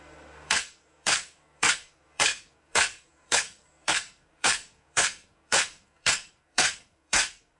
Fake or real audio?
fake